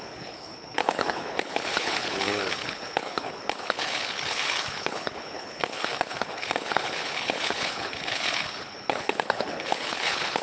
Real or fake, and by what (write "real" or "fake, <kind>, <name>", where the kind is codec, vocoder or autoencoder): fake, codec, HILCodec